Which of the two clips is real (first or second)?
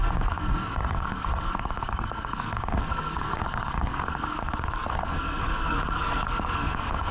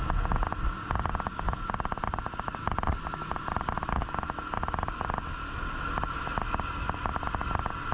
second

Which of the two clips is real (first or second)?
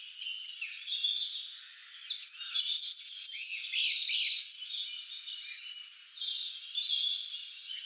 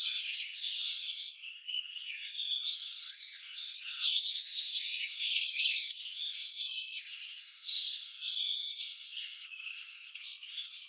first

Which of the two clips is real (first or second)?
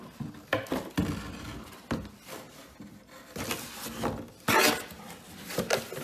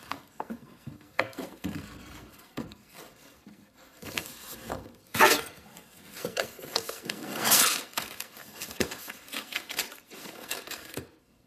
first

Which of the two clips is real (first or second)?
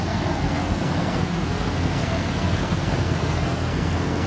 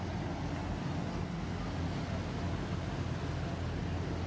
second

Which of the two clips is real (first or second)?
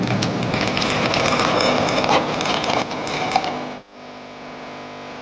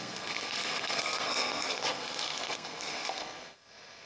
first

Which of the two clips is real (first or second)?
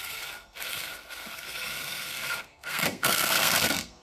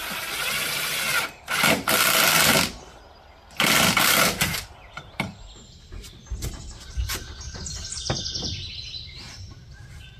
second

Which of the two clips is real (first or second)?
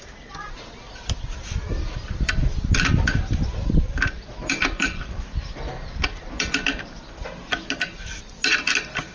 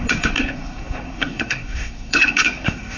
first